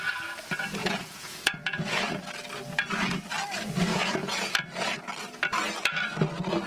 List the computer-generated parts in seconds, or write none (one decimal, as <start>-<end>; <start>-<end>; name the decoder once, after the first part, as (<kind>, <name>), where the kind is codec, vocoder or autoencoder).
0.8-2.3 (vocoder, Vocos); 3.9-4.5